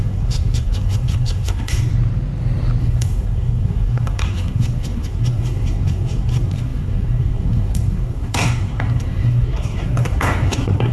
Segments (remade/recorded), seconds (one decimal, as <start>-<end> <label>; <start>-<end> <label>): 0.0-1.9 remade; 1.9-2.8 recorded; 2.8-10.9 remade